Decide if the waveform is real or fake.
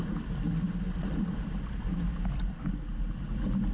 real